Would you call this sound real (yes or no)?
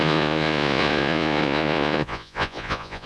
no